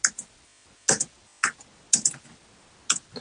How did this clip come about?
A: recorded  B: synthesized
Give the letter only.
A